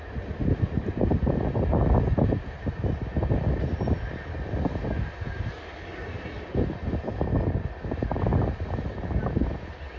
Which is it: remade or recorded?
recorded